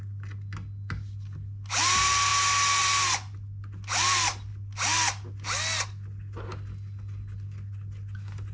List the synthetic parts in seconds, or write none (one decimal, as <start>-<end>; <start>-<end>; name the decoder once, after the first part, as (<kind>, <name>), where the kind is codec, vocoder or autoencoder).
none

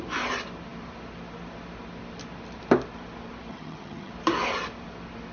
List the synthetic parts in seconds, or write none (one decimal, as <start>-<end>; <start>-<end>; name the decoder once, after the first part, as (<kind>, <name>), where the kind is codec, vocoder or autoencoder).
3.5-4.1 (vocoder, HiFi-GAN)

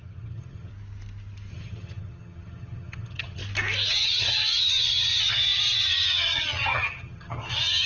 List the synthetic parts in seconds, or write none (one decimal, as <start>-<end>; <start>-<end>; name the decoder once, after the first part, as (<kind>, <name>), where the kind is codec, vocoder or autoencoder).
0.0-0.7 (vocoder, HiFi-GAN); 1.5-3.4; 3.9-7.9